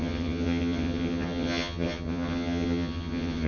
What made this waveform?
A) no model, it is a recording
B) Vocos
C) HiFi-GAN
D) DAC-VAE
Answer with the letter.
C